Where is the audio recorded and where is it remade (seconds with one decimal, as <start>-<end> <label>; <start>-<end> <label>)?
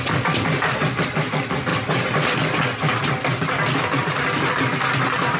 0.0-5.4 recorded